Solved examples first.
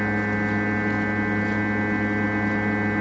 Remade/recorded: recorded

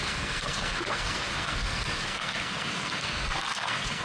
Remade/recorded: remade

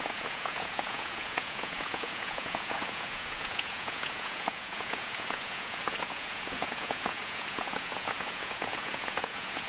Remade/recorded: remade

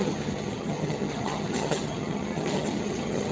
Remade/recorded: remade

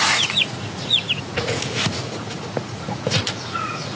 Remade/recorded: remade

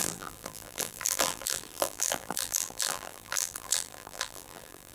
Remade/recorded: remade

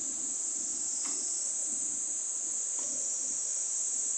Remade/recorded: recorded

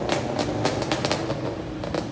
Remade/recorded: recorded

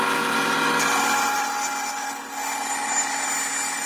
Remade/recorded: recorded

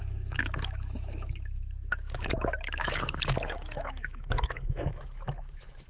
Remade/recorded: remade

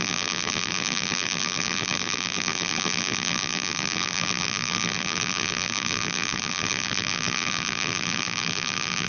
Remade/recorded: remade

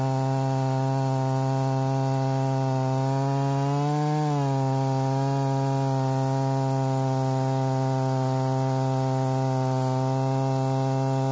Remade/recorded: recorded